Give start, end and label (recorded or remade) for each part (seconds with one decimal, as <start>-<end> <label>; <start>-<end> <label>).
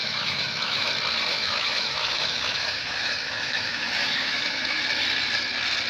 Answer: 0.0-0.9 remade; 0.9-1.3 recorded; 1.3-4.8 remade; 4.8-5.9 recorded